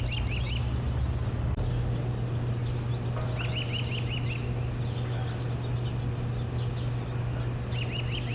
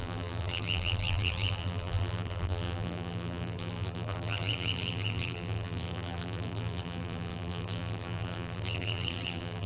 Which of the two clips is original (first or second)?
first